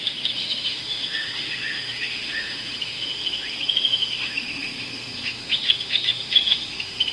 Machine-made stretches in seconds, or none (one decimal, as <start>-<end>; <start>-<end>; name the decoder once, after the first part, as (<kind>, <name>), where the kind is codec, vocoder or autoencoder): 0.0-7.1 (autoencoder, DAC-VAE)